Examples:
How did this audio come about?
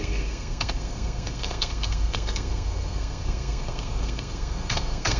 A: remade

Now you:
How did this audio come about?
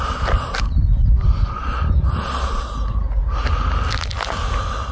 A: recorded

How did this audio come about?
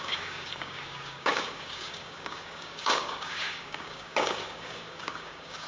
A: remade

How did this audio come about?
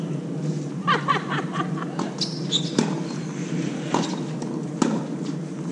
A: recorded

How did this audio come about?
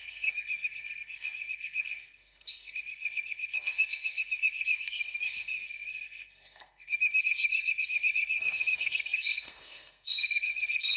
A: remade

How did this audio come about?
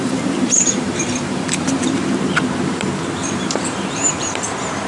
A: remade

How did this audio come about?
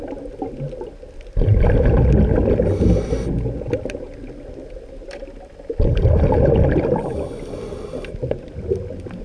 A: recorded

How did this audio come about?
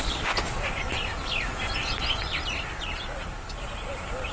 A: recorded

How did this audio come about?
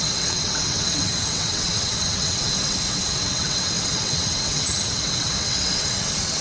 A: remade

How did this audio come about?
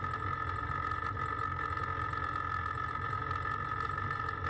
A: remade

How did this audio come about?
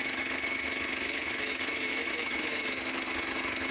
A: remade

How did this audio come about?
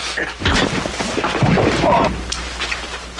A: recorded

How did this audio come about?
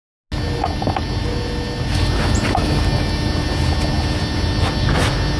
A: recorded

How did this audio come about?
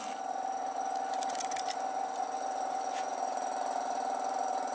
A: recorded